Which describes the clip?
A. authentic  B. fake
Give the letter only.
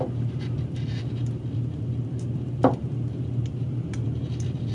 B